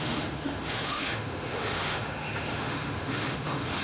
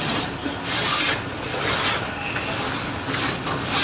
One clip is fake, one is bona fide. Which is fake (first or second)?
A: first